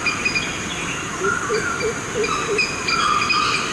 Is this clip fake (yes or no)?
no